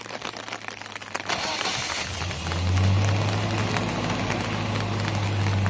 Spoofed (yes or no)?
no